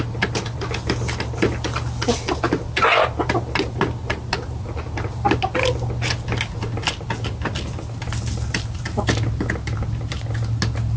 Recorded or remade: recorded